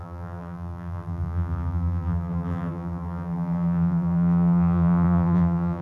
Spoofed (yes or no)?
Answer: yes